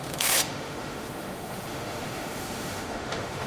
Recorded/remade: remade